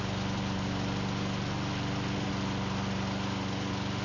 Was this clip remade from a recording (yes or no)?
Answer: no